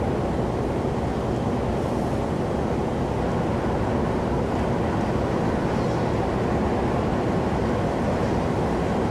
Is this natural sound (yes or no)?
yes